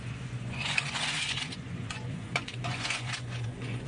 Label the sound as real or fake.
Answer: fake